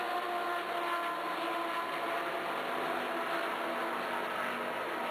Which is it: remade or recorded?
recorded